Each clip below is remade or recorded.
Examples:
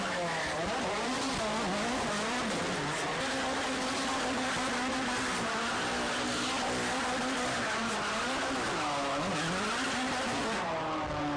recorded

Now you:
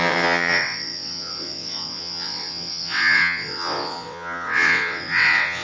remade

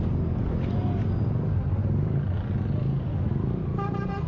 recorded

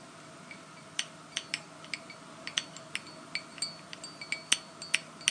recorded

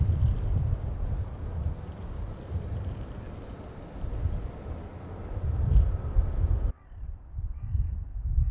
recorded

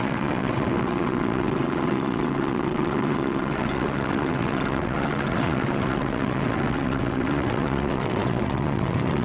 remade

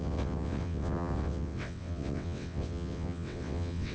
remade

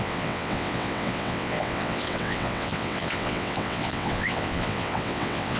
remade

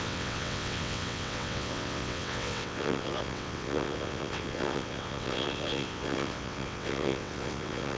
remade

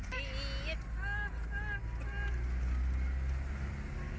recorded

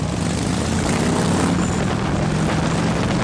recorded